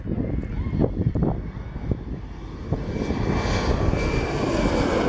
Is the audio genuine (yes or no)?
yes